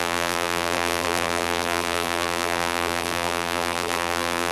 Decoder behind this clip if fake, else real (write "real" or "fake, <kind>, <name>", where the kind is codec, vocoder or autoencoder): fake, vocoder, BigVGAN v2